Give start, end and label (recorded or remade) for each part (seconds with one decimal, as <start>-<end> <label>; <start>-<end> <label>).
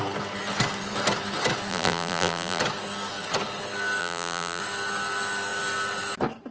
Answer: 0.0-1.7 recorded; 1.7-2.6 remade; 2.6-4.0 recorded; 4.0-4.6 remade; 4.6-6.5 recorded